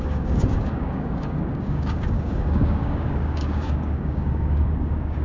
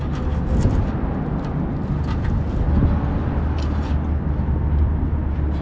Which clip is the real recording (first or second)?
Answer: second